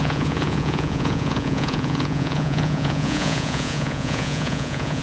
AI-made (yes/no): yes